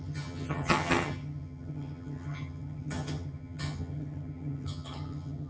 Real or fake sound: fake